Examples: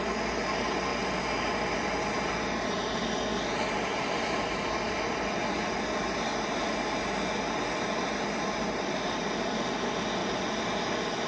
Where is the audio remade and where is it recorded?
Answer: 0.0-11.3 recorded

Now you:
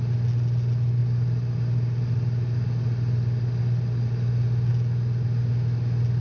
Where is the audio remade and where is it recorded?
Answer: 0.0-6.2 recorded

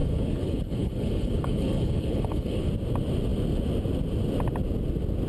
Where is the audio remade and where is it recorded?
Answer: 0.0-2.7 remade; 2.7-5.3 recorded

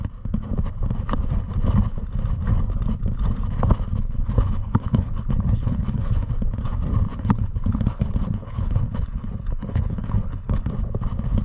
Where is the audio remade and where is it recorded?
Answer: 0.0-4.0 recorded; 4.0-6.3 remade; 6.3-7.1 recorded; 7.1-10.7 remade; 10.7-11.4 recorded

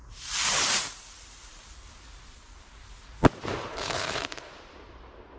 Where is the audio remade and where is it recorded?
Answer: 0.0-3.7 recorded; 3.7-4.5 remade; 4.5-5.4 recorded